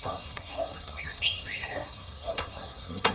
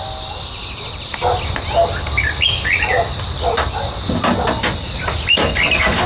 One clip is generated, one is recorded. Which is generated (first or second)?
first